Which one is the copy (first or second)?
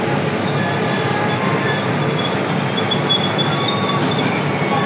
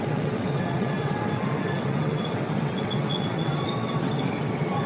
second